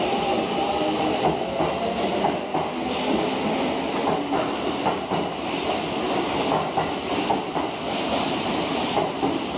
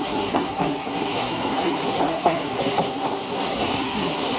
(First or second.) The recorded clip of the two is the first